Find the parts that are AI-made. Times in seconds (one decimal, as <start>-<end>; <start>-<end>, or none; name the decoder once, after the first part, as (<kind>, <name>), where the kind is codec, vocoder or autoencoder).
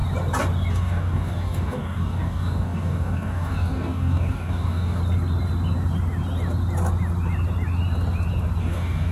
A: 0.7-5.0 (codec, DAC); 8.6-9.1